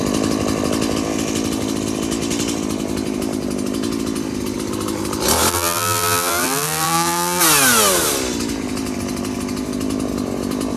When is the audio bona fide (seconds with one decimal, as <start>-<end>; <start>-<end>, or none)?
0.0-5.5; 7.4-10.8